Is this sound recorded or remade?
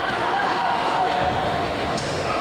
remade